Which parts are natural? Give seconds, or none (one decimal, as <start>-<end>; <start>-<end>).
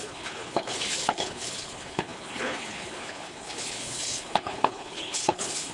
none